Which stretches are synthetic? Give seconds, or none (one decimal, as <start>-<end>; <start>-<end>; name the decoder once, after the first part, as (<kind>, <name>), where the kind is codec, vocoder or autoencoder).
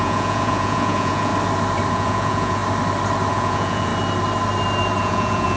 0.0-1.3 (vocoder, Vocos); 1.9-2.6; 3.3-3.9; 5.0-5.6